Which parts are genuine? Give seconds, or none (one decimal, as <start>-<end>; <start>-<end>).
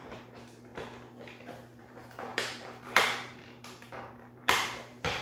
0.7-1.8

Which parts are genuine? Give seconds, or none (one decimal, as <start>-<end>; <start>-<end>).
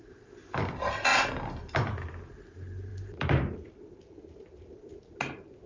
0.0-5.7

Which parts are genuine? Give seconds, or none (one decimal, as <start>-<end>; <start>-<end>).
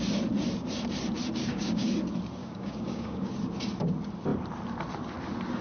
0.0-1.4; 1.9-2.4; 3.3-5.6